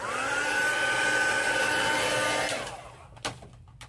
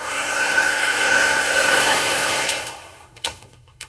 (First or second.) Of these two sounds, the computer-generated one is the second